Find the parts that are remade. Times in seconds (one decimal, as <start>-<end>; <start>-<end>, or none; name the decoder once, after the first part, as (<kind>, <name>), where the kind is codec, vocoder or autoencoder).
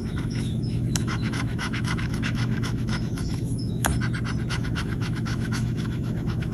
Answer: 0.0-3.9 (autoencoder, DAC-VAE); 4.5-6.5